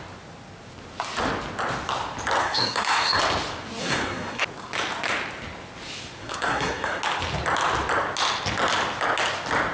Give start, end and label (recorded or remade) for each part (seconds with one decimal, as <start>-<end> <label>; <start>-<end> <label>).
0.0-2.4 recorded; 2.4-3.2 remade; 3.2-3.8 recorded; 3.8-4.4 remade; 4.4-6.2 recorded; 6.2-7.0 remade; 7.0-9.7 recorded

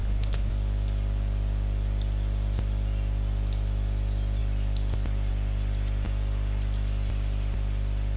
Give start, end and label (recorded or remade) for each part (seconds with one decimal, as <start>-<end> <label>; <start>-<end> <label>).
0.0-0.5 remade; 0.5-8.2 recorded

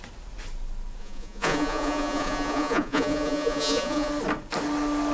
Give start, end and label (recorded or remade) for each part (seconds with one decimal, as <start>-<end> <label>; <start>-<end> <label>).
0.0-1.0 recorded; 1.0-4.1 remade; 4.1-5.1 recorded

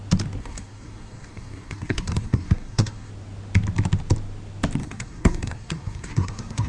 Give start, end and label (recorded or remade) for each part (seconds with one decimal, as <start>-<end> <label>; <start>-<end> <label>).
0.0-0.4 recorded; 0.4-3.1 remade; 3.1-4.8 recorded; 4.8-6.7 remade

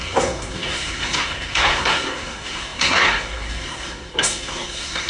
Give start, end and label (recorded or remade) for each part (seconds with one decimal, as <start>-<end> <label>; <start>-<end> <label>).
0.0-5.1 remade

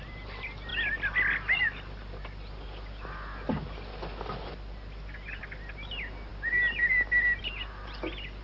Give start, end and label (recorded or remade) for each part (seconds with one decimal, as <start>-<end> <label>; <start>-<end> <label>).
0.0-8.4 recorded

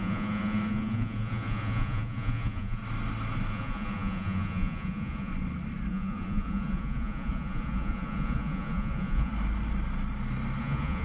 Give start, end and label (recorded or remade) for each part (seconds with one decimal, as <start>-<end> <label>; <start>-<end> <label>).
0.0-2.8 remade; 2.8-3.5 recorded; 3.5-5.3 remade; 5.3-5.9 recorded; 5.9-9.3 remade; 9.3-10.6 recorded; 10.6-11.0 remade

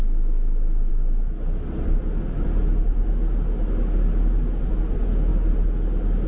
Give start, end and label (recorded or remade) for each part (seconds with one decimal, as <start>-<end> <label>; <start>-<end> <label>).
0.0-6.3 recorded